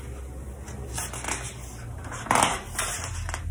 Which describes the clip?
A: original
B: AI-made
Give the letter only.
A